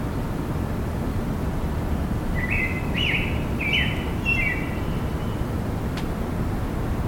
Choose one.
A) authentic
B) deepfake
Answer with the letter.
A